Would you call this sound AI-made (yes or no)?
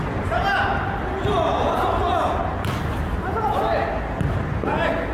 no